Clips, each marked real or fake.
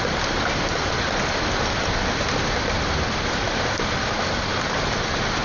real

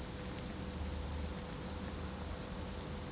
real